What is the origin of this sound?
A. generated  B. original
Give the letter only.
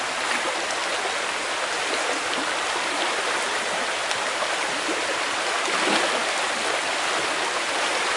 B